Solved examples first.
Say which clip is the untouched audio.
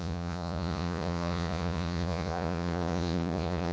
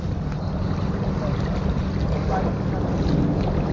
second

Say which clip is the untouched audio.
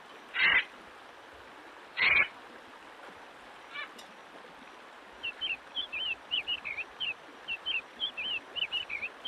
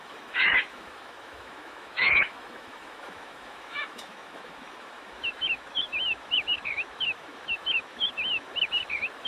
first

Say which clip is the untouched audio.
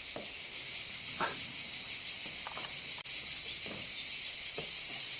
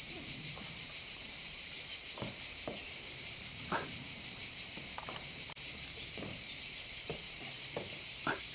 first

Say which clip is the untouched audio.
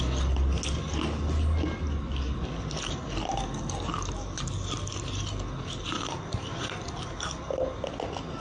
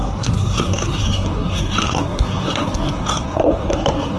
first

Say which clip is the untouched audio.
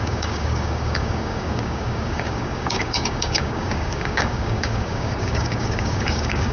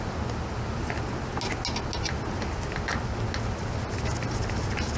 second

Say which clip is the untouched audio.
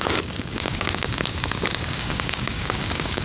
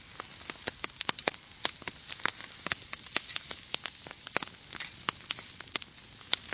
second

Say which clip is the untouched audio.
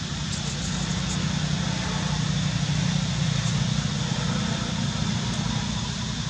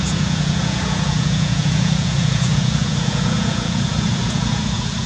first